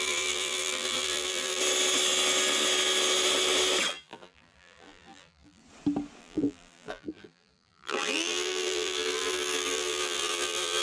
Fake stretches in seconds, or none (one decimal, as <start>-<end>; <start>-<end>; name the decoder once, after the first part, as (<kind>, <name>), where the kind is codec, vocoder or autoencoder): 0.0-1.6 (vocoder, BigVGAN v2); 3.9-5.6; 6.2-10.8